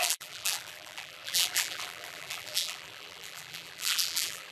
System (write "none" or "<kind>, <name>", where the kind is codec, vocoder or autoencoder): vocoder, BigVGAN v2